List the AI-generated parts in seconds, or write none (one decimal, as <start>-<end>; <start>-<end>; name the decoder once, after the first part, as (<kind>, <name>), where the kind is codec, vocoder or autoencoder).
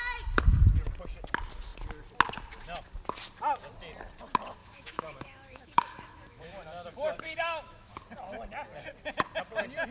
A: 4.6-7.9 (autoencoder, DAC-VAE)